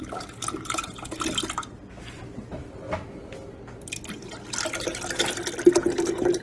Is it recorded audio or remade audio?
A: recorded